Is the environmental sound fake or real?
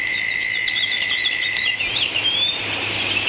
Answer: fake